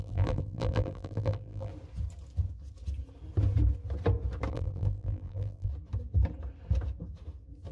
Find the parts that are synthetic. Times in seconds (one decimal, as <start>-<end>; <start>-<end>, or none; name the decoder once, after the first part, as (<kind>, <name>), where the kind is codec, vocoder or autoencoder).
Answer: 0.0-1.7 (vocoder, BigVGAN v2); 4.5-5.7

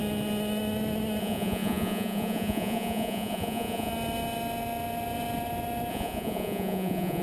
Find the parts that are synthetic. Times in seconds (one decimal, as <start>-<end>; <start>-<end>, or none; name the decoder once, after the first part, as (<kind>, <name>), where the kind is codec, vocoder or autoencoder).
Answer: 1.2-3.9 (vocoder, Vocos); 5.9-7.2